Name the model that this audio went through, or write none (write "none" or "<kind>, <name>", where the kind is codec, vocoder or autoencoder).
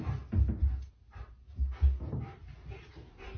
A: none